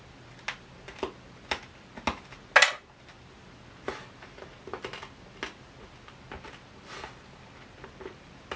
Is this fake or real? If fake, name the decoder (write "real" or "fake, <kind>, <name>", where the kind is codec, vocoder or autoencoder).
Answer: real